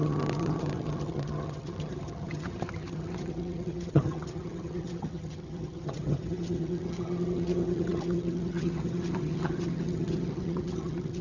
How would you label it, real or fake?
fake